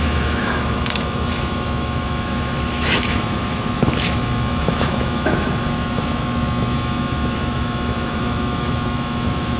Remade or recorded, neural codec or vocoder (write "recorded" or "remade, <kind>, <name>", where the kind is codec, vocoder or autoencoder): remade, autoencoder, DAC-VAE